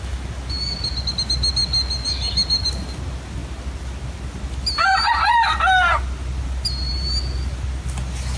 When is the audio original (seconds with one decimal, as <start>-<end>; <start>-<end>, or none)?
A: 0.0-8.4